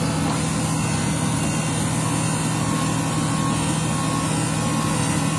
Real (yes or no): yes